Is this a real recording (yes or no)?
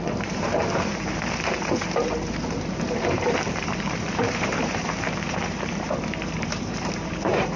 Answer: no